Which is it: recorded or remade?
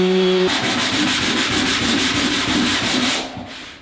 remade